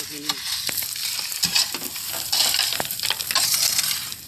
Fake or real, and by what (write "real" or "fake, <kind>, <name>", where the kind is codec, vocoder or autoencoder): real